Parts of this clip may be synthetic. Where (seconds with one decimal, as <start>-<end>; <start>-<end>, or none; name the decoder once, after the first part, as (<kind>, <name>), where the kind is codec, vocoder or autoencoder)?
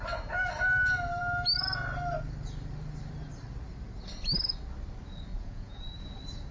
5.3-6.0 (vocoder, Vocos)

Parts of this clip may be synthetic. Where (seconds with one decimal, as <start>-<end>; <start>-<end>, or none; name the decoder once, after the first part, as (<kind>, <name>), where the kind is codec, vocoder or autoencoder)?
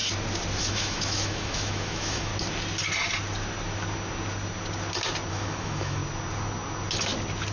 0.6-2.3 (autoencoder, DAC-VAE); 5.3-6.0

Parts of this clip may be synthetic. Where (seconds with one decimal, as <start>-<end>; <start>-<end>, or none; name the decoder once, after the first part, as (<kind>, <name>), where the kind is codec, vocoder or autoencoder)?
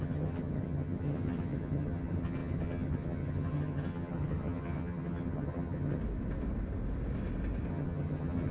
0.0-6.0 (vocoder, HiFi-GAN); 7.7-8.5